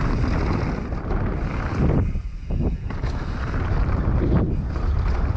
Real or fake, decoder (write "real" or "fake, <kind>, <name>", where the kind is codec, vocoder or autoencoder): real